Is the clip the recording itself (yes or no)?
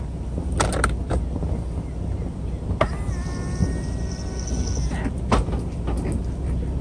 yes